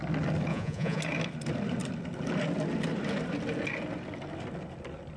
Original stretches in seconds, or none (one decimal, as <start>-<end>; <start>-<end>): 0.0-0.5; 1.0-5.2